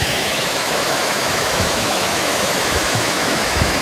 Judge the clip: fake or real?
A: fake